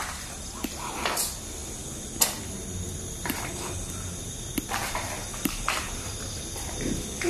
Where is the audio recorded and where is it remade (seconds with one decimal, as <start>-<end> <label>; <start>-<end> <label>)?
0.0-7.3 recorded